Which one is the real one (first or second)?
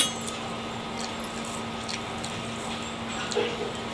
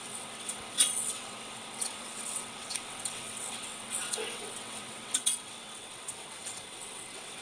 first